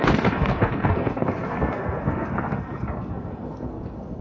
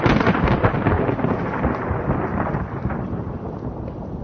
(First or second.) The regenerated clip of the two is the first